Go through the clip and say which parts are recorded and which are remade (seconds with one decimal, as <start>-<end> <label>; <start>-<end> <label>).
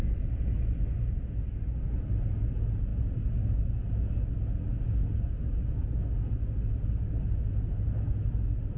0.0-8.8 recorded